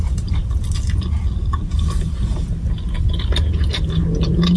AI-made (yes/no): no